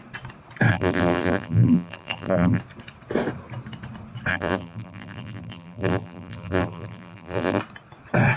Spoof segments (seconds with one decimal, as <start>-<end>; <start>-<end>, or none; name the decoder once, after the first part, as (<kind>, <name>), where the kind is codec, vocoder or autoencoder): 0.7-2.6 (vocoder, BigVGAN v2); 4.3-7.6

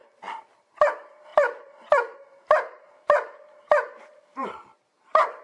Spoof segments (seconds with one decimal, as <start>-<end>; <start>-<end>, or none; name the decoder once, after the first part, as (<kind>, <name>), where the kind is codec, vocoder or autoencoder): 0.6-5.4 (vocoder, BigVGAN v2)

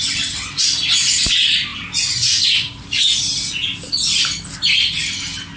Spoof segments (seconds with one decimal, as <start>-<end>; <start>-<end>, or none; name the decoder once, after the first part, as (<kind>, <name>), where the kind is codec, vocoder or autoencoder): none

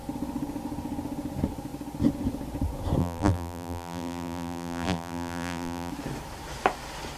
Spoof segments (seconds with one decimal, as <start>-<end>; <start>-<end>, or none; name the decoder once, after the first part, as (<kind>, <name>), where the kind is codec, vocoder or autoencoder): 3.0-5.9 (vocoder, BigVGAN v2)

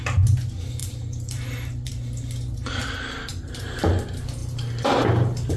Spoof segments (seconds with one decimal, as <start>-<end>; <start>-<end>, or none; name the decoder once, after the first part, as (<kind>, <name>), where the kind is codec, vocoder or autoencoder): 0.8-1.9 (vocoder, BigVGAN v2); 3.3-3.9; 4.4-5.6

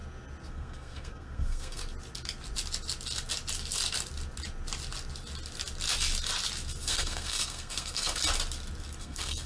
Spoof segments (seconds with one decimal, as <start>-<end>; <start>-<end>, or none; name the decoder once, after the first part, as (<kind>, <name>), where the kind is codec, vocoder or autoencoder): 0.5-1.8 (codec, SNAC); 6.8-8.2; 9.0-9.5

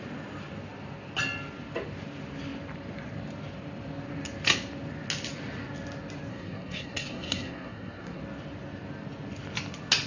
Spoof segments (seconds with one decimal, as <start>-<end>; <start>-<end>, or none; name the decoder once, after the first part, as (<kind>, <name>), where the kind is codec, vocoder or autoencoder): 6.3-8.2 (codec, SNAC)